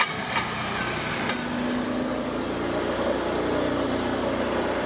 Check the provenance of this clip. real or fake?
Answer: real